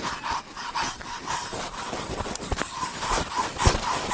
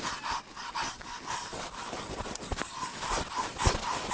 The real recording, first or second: second